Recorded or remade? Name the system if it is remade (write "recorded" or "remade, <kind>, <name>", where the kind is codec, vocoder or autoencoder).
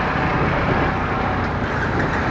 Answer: remade, vocoder, BigVGAN v2